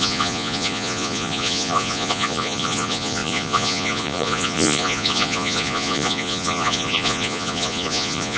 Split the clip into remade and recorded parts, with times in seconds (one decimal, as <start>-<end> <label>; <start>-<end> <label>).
0.0-8.4 remade